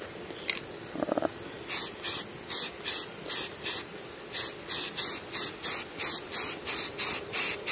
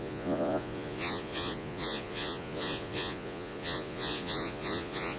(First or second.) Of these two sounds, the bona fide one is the first